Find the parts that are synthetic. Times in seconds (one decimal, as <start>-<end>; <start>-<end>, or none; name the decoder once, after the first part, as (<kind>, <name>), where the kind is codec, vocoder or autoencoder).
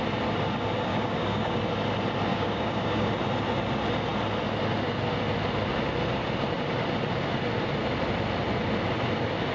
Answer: 0.9-1.6 (codec, DAC); 2.3-3.1